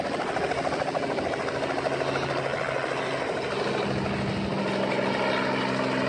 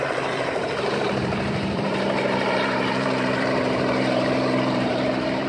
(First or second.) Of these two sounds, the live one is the first